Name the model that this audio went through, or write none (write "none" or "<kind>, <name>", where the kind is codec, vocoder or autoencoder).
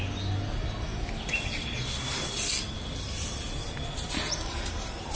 none